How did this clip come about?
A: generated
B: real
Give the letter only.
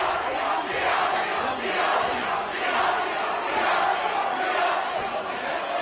A